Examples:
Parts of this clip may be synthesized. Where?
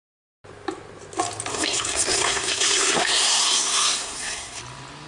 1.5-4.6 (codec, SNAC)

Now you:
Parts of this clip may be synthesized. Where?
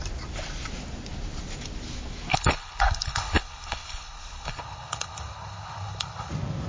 2.3-6.3 (codec, HILCodec)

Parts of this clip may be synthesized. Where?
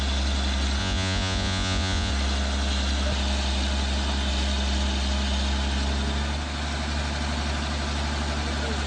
0.8-2.1 (vocoder, Vocos)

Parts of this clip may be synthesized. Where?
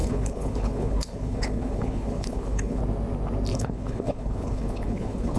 0.0-2.8 (codec, HILCodec); 3.5-5.4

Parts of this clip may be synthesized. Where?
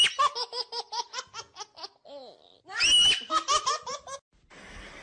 none